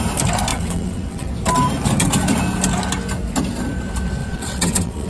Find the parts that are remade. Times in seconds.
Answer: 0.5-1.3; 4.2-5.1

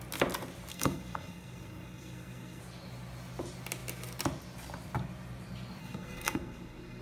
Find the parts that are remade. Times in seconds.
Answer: 0.7-2.6; 5.8-7.0